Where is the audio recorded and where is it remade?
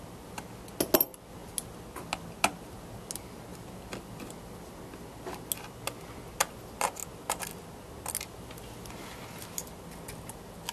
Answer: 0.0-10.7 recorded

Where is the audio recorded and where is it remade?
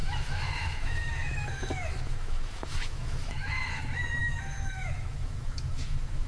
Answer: 0.0-3.8 remade; 3.8-4.2 recorded; 4.2-6.3 remade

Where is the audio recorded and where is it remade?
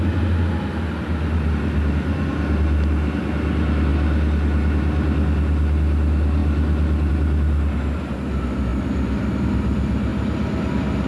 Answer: 0.0-11.1 recorded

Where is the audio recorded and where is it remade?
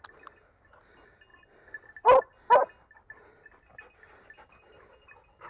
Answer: 0.0-5.5 recorded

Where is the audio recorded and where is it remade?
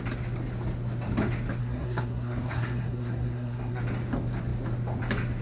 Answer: 0.0-1.6 recorded; 1.6-3.8 remade; 3.8-5.4 recorded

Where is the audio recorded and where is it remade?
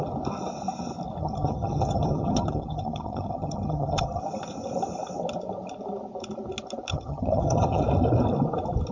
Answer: 0.0-1.2 recorded; 1.2-4.2 remade; 4.2-6.9 recorded; 6.9-7.8 remade; 7.8-8.9 recorded